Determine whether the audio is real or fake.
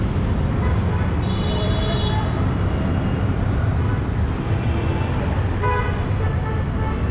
real